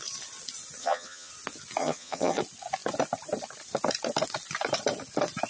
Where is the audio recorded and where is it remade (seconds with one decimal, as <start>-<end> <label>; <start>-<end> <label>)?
0.0-0.8 recorded; 0.8-1.3 remade; 1.3-1.8 recorded; 1.8-2.4 remade; 2.4-5.5 recorded